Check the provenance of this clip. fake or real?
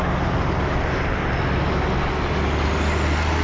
real